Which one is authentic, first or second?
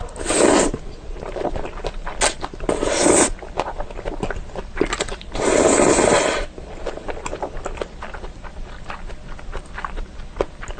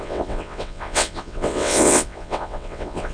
first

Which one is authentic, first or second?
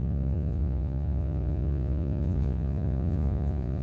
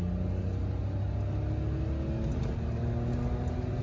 second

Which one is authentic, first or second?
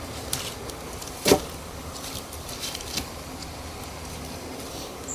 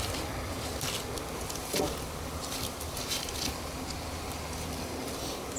second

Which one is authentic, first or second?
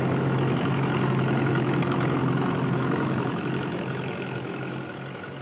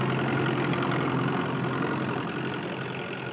second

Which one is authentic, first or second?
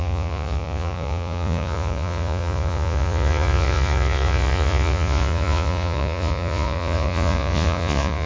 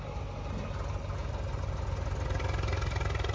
second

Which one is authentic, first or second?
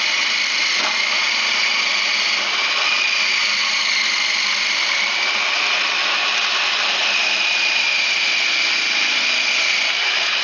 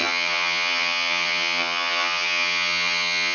first